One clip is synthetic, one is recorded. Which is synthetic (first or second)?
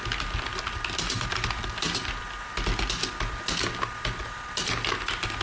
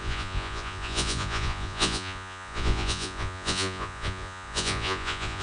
second